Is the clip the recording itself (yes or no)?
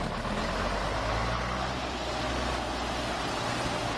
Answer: yes